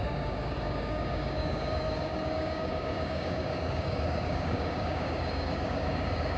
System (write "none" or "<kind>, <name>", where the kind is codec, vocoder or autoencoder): codec, DAC